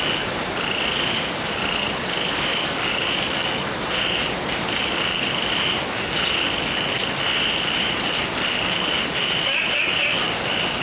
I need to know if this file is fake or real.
real